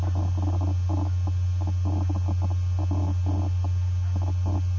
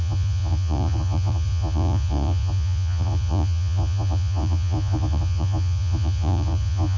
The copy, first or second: second